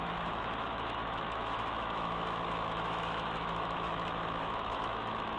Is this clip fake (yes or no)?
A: yes